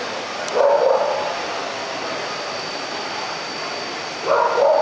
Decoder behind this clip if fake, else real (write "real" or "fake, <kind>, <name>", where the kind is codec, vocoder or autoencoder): real